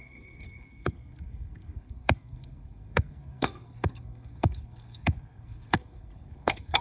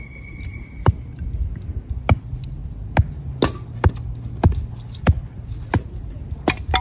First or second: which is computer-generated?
first